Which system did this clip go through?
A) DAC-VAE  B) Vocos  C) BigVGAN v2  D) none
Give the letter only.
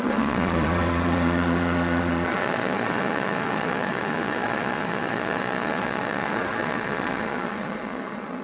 B